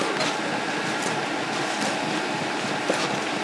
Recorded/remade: recorded